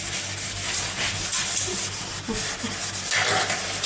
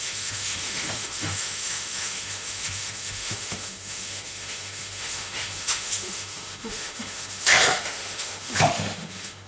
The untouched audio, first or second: first